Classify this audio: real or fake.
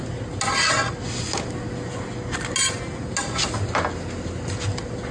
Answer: real